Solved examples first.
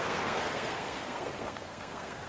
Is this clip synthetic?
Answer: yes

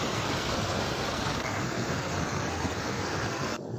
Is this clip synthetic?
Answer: yes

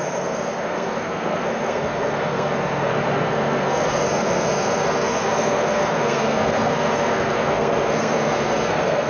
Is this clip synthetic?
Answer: yes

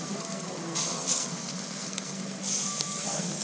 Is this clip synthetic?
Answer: yes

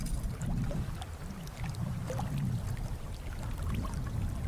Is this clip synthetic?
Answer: no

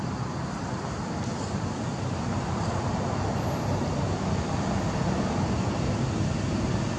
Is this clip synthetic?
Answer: no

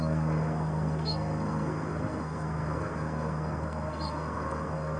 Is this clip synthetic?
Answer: yes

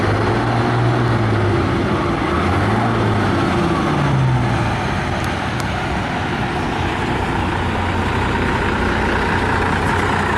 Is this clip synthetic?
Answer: no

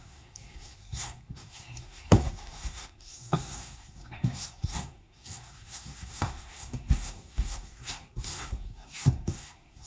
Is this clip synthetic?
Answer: yes